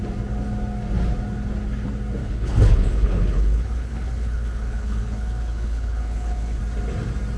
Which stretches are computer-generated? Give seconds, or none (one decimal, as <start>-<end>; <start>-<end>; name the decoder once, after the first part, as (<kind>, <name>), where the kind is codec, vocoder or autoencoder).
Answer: 2.2-6.6 (codec, HILCodec)